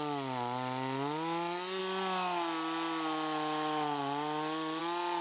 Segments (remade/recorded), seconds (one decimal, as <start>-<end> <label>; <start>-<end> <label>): 0.0-5.2 recorded